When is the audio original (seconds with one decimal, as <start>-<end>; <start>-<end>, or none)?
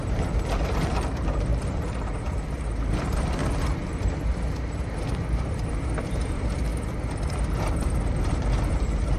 3.4-4.3; 6.7-8.2